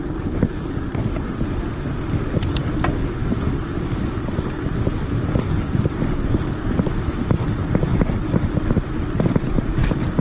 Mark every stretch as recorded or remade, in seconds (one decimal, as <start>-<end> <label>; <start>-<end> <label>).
0.0-10.2 recorded